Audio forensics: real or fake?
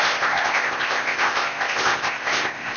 fake